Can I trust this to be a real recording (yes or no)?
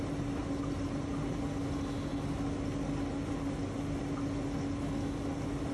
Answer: yes